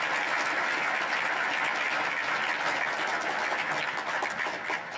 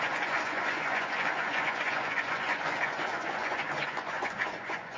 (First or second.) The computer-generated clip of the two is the second